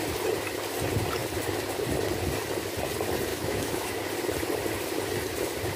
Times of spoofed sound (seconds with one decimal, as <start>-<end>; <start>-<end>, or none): 3.3-3.9